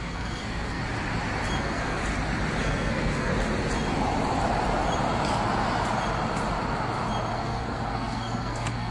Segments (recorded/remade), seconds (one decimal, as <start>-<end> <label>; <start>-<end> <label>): 0.0-0.8 remade; 0.8-1.6 recorded; 1.6-2.0 remade; 2.0-2.6 recorded; 2.6-3.3 remade; 3.3-7.3 recorded; 7.3-8.9 remade